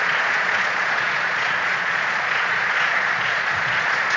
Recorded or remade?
remade